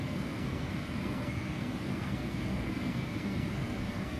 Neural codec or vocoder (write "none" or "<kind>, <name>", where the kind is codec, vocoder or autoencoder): codec, SNAC